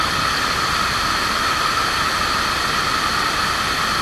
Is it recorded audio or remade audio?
recorded